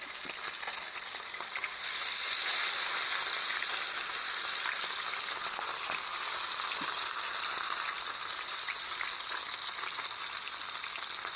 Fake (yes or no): no